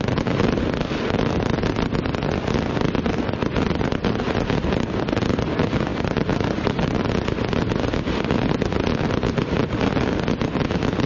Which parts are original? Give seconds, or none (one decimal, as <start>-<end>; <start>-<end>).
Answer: 0.0-5.9; 7.0-11.1